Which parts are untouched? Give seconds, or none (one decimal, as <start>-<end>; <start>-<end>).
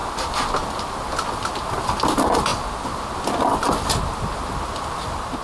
0.0-5.4